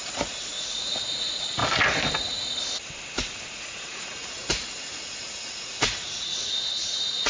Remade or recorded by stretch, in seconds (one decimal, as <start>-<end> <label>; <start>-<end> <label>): 0.0-1.6 remade; 1.6-3.0 recorded; 3.0-7.3 remade